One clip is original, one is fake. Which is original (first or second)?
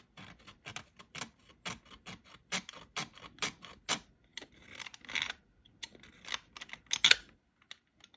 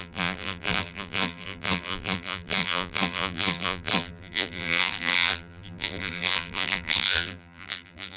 first